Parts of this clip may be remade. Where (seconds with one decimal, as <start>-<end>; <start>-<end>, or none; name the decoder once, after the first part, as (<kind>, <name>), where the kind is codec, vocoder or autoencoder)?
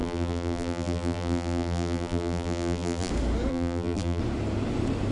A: 0.0-3.1 (vocoder, BigVGAN v2); 3.5-4.2